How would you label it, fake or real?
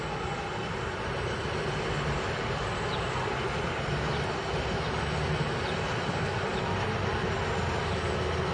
real